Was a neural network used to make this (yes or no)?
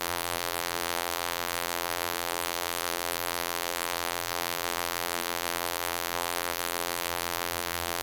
yes